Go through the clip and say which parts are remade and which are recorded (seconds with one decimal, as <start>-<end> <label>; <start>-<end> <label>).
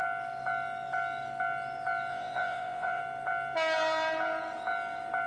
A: 0.0-2.1 recorded; 2.1-3.0 remade; 3.0-5.3 recorded